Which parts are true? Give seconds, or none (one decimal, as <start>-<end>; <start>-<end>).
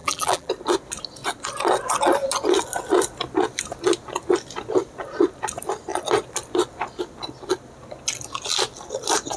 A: 0.5-9.4